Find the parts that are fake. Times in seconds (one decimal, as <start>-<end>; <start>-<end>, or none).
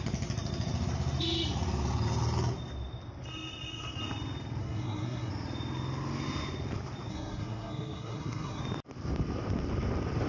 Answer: 4.6-5.3; 7.1-8.6